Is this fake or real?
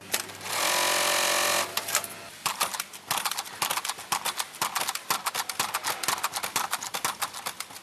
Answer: real